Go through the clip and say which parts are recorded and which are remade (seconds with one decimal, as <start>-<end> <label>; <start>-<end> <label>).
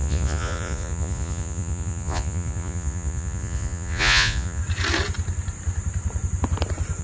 0.0-4.6 remade; 4.6-7.0 recorded